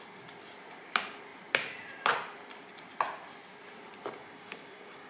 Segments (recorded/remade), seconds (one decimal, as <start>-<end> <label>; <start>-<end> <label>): 0.0-4.2 recorded; 4.2-5.1 remade